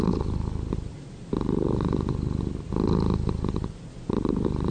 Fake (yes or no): no